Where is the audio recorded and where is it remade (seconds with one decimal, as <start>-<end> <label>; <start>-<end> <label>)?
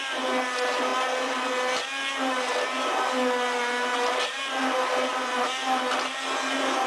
0.0-6.9 recorded